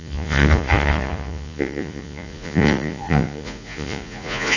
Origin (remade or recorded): remade